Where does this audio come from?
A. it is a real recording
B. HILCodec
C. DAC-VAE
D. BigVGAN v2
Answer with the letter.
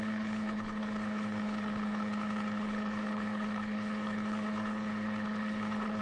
B